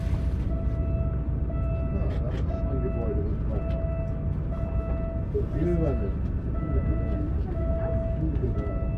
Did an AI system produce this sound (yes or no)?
no